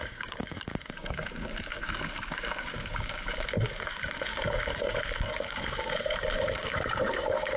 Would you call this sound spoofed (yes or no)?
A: yes